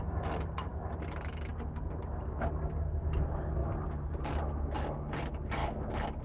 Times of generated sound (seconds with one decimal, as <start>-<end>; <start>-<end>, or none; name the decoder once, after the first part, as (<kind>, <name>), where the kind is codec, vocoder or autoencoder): 3.6-4.3 (vocoder, BigVGAN v2)